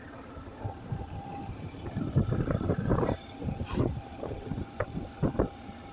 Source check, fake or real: fake